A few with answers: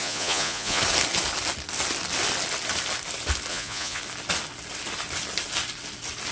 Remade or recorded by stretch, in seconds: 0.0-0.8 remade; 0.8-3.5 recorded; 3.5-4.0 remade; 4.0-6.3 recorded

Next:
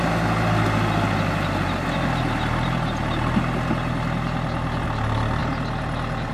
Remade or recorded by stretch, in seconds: 0.0-6.3 recorded

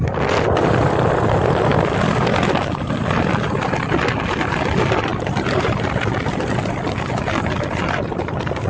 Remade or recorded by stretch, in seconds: 0.0-8.7 recorded

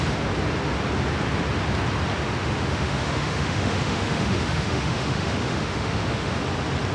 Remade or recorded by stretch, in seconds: 0.0-2.4 recorded; 2.4-6.4 remade; 6.4-6.9 recorded